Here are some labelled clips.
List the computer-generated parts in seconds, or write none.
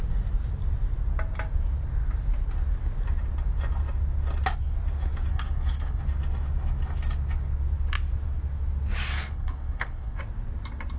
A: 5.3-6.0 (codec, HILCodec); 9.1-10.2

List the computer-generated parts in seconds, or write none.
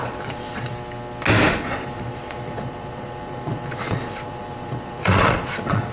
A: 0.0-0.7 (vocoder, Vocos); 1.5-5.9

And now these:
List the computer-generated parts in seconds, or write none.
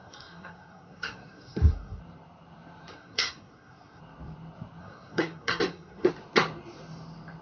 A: 0.0-2.0 (codec, SNAC); 2.9-4.0; 4.8-6.1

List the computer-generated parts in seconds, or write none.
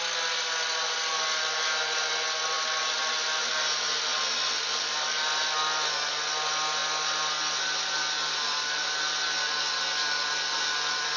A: none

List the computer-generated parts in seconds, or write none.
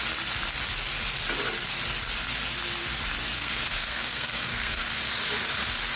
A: 3.3-5.0 (codec, SNAC)